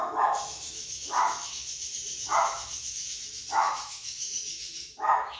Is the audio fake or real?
fake